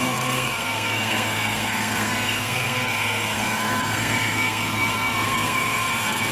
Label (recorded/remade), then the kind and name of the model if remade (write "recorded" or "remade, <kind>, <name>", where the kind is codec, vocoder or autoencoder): remade, codec, SNAC